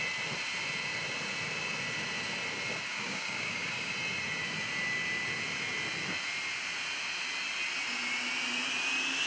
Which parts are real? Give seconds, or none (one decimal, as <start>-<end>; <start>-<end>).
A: 0.0-2.9; 3.9-9.3